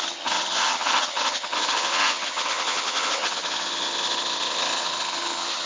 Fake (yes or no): yes